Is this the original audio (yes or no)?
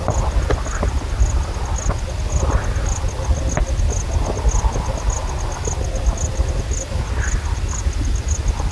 yes